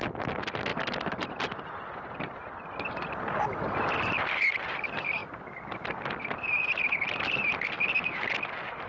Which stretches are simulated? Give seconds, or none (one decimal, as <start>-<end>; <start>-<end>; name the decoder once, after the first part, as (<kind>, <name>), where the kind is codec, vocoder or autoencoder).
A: none